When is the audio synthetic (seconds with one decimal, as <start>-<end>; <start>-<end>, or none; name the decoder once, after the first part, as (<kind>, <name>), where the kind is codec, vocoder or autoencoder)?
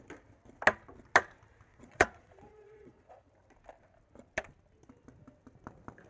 1.7-3.3 (vocoder, Vocos)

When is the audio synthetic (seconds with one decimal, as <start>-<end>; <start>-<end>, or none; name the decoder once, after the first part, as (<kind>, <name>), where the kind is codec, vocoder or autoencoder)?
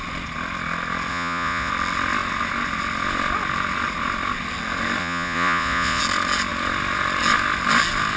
1.1-1.7 (vocoder, Vocos); 5.0-6.0